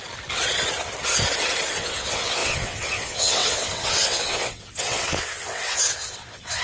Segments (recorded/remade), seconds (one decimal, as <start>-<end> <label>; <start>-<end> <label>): 0.0-1.7 recorded; 1.7-6.6 remade